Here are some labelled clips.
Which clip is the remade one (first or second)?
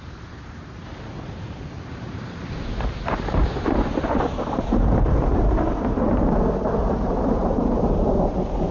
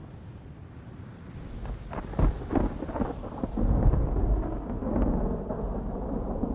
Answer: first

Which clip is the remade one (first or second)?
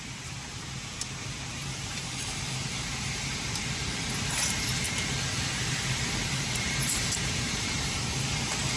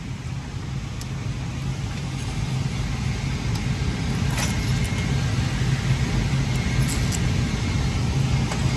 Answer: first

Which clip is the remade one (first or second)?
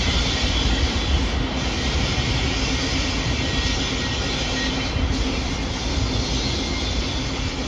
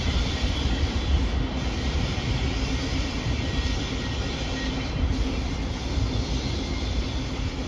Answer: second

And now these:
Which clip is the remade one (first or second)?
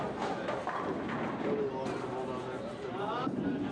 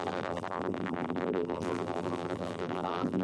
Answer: second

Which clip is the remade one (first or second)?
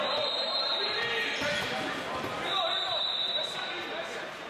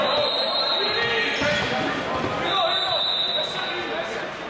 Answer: first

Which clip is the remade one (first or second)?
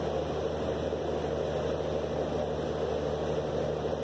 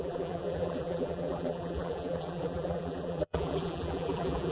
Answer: second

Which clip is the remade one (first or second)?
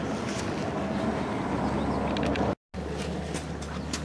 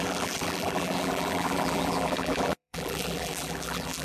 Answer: second